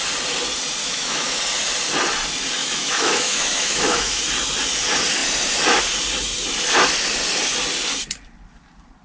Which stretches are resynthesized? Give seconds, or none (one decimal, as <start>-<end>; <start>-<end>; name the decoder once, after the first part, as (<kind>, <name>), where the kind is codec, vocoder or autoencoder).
0.8-1.4 (autoencoder, DAC-VAE); 2.6-4.2